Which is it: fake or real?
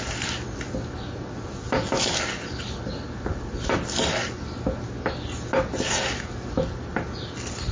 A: real